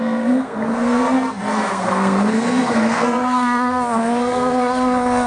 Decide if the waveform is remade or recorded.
remade